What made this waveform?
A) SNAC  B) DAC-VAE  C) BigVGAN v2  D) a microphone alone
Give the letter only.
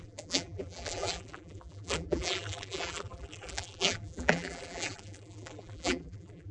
C